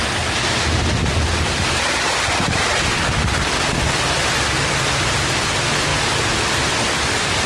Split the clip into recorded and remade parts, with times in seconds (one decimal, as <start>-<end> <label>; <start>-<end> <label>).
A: 0.0-7.5 recorded